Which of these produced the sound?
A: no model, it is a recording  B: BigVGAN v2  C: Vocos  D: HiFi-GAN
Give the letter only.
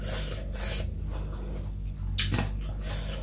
A